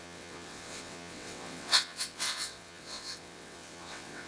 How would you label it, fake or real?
fake